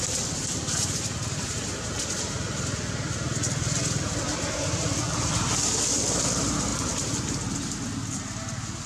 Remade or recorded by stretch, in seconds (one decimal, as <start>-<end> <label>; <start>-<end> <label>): 0.0-8.9 recorded